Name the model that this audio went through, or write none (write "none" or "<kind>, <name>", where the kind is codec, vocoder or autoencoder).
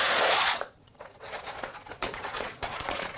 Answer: vocoder, Vocos